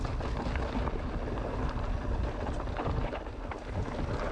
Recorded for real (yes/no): yes